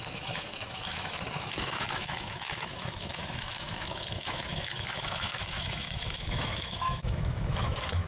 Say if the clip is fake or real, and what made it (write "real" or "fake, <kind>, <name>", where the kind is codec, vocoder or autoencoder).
fake, autoencoder, DAC-VAE